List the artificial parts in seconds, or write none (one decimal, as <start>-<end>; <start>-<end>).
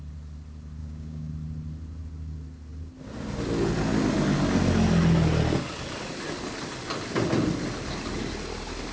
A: 0.8-1.3